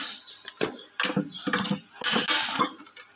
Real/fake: real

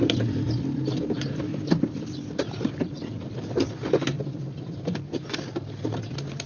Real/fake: fake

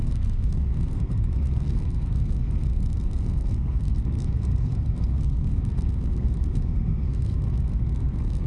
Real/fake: fake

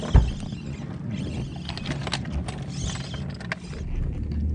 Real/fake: real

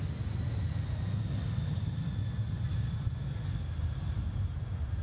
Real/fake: real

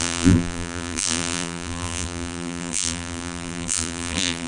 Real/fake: fake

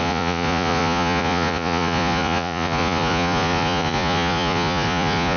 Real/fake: fake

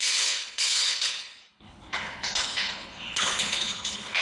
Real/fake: fake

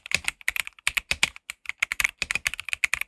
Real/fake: fake